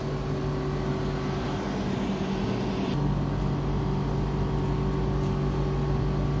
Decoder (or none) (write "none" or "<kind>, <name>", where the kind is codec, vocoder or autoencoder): none